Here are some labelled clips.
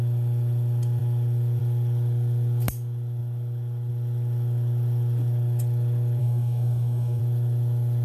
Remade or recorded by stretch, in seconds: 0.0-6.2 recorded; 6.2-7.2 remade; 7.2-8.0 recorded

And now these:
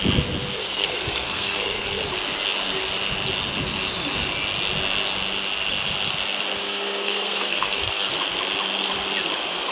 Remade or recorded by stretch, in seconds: 0.0-0.6 recorded; 0.6-2.0 remade; 2.0-6.6 recorded; 6.6-8.1 remade; 8.1-9.7 recorded

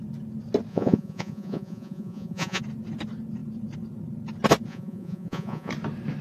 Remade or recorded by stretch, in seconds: 0.0-0.7 recorded; 0.7-2.6 remade; 2.6-4.7 recorded; 4.7-5.7 remade; 5.7-6.2 recorded

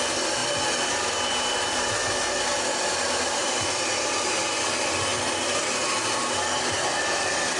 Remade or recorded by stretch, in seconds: 0.0-7.6 recorded

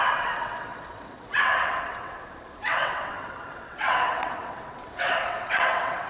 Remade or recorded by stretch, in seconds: 0.0-6.1 remade